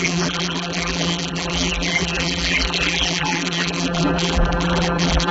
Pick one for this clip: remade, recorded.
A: remade